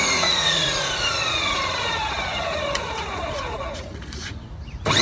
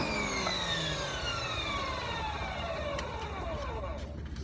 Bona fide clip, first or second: second